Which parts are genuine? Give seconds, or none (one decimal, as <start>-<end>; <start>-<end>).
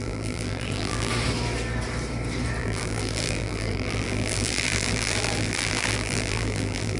1.1-2.6